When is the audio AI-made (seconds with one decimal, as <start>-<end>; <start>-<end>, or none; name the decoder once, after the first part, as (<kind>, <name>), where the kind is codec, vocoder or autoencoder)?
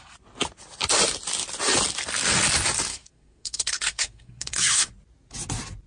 2.9-4.9 (codec, SNAC)